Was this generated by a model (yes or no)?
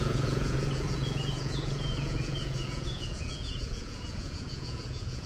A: yes